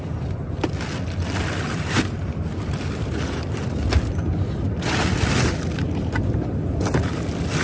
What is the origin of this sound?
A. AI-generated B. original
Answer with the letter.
A